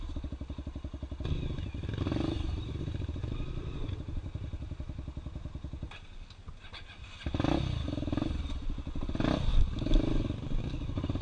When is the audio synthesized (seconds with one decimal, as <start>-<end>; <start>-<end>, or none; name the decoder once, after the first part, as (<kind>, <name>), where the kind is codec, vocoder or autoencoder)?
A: 9.5-10.6 (vocoder, BigVGAN v2)